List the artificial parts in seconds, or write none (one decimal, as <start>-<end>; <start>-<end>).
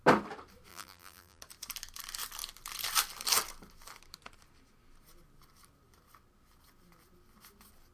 0.7-1.4